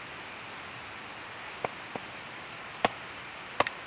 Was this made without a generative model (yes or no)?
yes